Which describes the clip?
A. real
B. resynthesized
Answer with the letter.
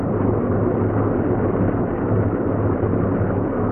A